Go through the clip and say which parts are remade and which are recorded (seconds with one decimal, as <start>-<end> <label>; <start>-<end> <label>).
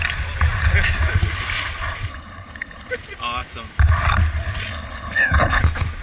0.0-2.1 recorded; 2.1-2.9 remade; 2.9-4.7 recorded; 4.7-5.6 remade; 5.6-6.0 recorded